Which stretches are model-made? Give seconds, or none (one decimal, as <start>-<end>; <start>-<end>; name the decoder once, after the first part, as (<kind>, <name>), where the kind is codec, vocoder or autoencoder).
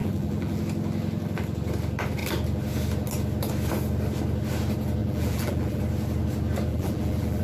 0.0-0.6 (vocoder, BigVGAN v2); 5.0-5.8; 6.7-7.4